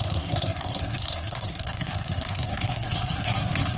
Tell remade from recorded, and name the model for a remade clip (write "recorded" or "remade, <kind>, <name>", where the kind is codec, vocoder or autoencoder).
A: remade, codec, SNAC